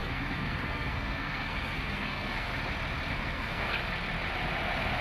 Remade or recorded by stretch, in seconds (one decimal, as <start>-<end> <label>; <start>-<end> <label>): 0.0-2.5 remade; 2.5-3.1 recorded; 3.1-3.8 remade; 3.8-5.0 recorded